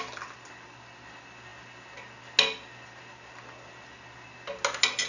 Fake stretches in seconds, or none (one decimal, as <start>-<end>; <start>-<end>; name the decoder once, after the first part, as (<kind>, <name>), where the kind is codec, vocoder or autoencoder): none